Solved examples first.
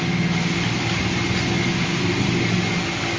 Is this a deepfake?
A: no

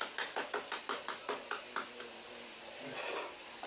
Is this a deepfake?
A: no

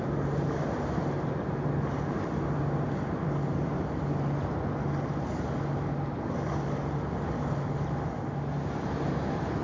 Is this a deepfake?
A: no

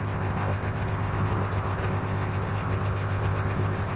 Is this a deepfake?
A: yes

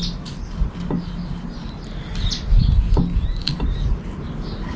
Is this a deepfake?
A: no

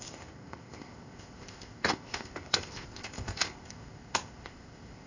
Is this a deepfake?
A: yes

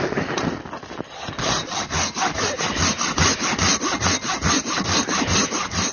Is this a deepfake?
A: no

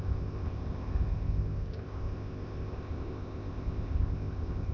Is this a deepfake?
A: yes